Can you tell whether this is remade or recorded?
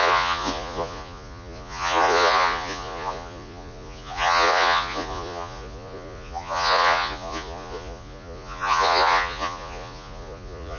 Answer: remade